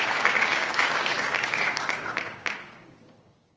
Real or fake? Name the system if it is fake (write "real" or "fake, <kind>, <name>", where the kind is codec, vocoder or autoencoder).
fake, codec, DAC